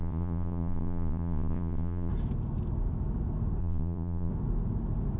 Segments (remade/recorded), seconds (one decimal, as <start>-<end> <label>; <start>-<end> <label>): 0.0-2.1 remade; 2.1-3.6 recorded; 3.6-4.3 remade; 4.3-5.2 recorded